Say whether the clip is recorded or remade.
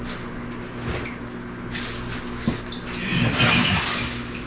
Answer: recorded